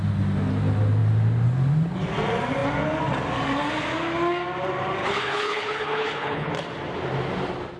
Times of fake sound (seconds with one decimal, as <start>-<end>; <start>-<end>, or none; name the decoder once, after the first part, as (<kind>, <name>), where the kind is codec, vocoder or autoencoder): 5.0-6.5 (codec, HILCodec)